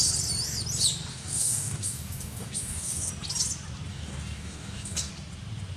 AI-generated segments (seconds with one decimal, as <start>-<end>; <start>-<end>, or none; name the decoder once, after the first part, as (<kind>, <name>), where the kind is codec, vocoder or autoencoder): 1.1-3.1 (codec, DAC); 3.9-5.1